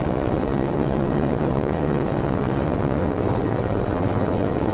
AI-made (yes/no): yes